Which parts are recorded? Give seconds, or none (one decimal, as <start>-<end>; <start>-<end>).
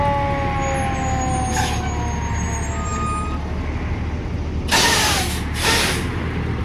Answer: 0.0-6.6